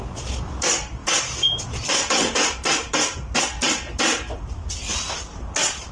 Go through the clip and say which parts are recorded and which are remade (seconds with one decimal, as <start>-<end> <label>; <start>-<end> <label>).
0.0-1.0 recorded; 1.0-3.4 remade; 3.4-5.9 recorded